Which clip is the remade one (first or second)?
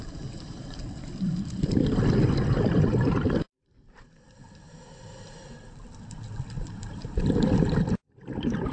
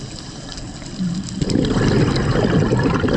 first